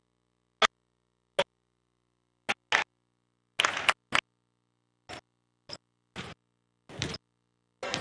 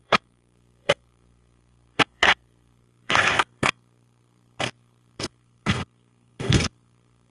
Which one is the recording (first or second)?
first